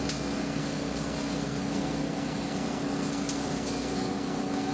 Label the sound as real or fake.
fake